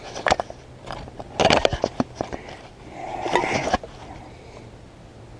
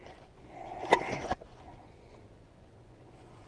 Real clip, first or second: first